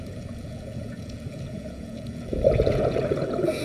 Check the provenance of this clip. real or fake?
fake